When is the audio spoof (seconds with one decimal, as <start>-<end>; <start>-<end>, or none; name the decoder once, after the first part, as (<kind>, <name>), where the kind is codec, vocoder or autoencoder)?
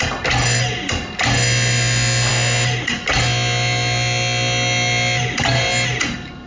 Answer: none